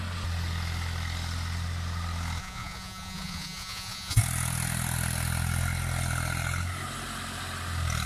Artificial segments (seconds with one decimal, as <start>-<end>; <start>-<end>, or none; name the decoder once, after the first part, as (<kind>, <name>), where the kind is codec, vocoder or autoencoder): 2.4-4.2 (vocoder, Vocos)